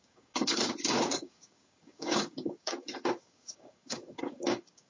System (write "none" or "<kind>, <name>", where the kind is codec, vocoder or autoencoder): codec, DAC